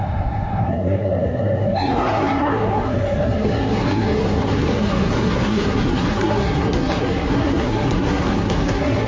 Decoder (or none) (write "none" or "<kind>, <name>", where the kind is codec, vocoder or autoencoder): codec, SNAC